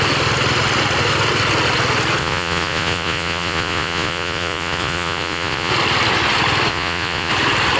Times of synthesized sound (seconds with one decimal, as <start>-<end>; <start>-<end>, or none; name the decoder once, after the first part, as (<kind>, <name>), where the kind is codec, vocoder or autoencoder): 2.2-5.7 (vocoder, Vocos); 6.7-7.3